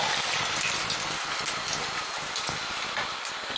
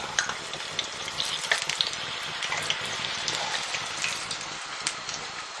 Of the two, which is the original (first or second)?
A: first